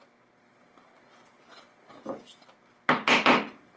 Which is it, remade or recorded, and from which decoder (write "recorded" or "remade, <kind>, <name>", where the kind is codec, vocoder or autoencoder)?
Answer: recorded